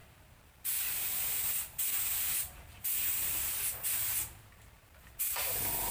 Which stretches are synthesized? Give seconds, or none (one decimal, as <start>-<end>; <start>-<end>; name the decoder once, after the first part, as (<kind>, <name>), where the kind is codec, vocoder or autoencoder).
0.0-3.5 (vocoder, BigVGAN v2); 3.9-5.9